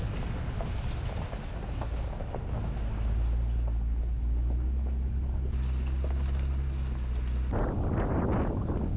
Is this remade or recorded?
recorded